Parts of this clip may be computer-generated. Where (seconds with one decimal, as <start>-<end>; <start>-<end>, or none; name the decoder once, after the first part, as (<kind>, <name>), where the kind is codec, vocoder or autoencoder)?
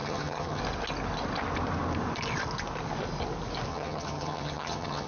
0.0-0.6 (vocoder, HiFi-GAN); 3.7-5.1